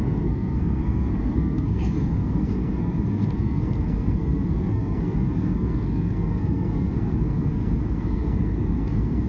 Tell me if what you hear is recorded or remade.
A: remade